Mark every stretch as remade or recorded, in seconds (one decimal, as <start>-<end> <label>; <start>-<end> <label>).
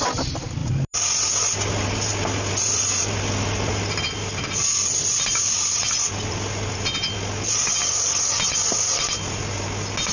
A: 0.0-10.1 recorded